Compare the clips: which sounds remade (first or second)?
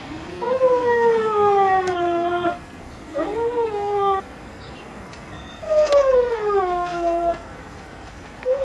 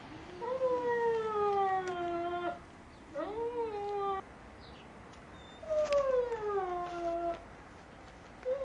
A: first